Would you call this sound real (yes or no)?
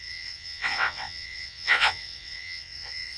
no